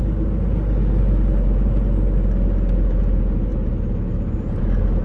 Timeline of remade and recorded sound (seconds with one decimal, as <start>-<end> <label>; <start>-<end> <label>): 0.0-5.0 recorded